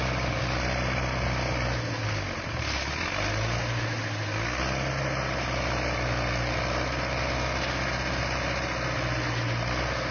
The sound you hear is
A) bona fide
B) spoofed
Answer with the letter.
A